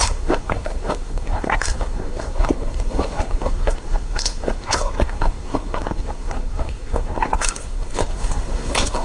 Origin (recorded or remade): remade